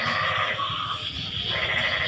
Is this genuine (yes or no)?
yes